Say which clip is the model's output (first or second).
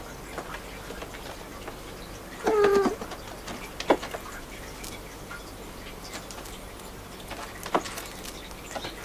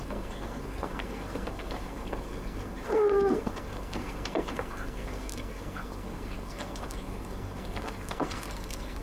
second